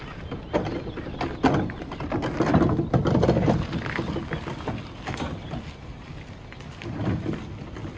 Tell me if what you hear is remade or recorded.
recorded